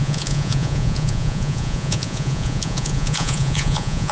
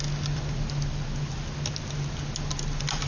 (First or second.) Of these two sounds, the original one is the second